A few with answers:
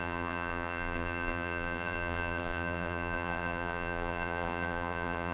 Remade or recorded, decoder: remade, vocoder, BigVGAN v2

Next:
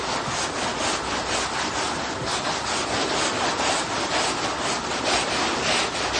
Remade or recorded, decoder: recorded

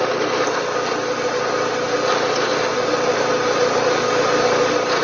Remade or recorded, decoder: recorded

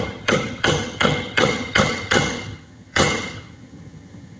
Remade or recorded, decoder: remade, vocoder, HiFi-GAN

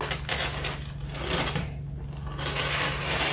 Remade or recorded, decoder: recorded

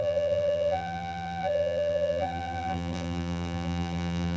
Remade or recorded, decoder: remade, vocoder, BigVGAN v2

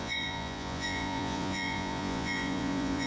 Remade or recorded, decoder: remade, vocoder, Vocos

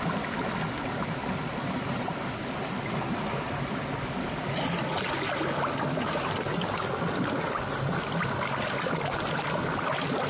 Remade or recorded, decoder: recorded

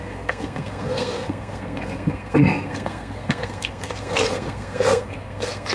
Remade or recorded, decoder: remade, codec, SNAC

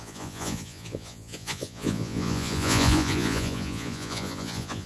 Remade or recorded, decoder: remade, vocoder, Vocos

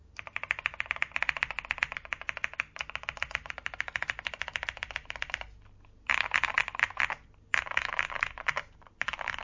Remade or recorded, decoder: recorded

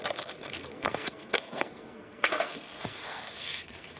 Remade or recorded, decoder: remade, codec, SNAC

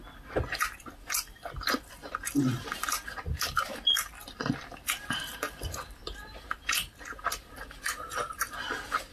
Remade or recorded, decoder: remade, vocoder, BigVGAN v2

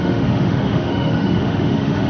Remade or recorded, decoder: remade, autoencoder, DAC-VAE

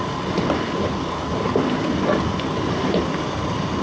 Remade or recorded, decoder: recorded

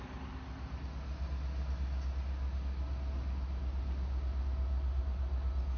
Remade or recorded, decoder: recorded